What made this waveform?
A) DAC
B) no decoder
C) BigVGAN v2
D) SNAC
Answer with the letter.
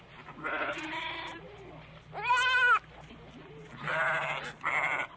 B